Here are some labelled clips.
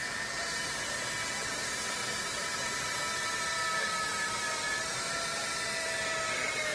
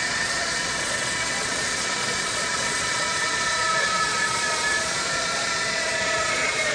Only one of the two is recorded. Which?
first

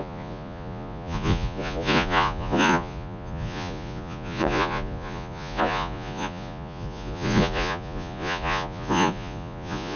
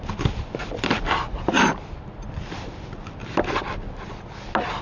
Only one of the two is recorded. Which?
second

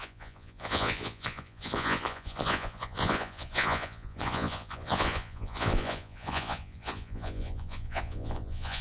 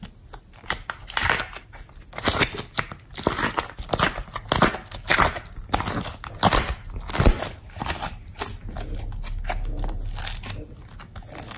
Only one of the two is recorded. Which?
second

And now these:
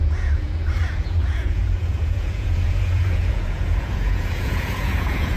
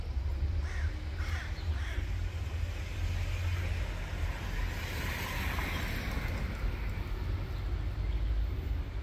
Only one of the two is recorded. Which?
second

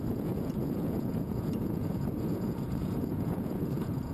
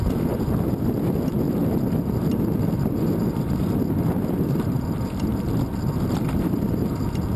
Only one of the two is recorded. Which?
second